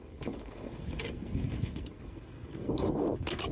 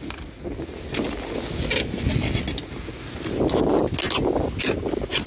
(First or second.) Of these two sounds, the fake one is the first